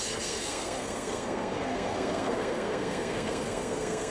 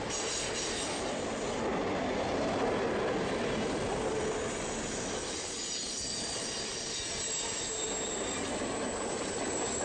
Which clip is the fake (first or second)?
first